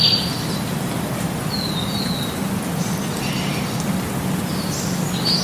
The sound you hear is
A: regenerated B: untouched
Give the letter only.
B